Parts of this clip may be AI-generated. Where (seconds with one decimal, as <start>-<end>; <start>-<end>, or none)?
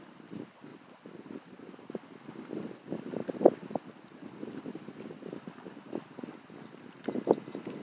none